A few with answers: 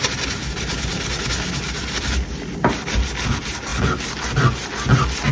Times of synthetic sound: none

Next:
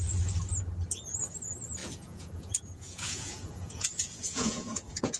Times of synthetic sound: 1.8-5.2 (vocoder, Vocos)

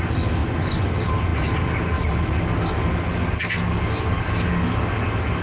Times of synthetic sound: 0.4-0.9 (vocoder, Vocos)

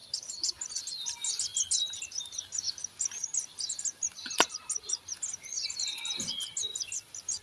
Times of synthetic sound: 0.0-0.8 (vocoder, BigVGAN v2)

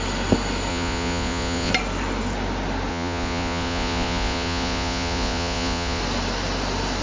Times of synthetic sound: 0.7-1.7 (vocoder, Vocos); 2.9-6.0